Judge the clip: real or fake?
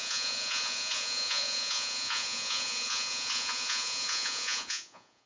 fake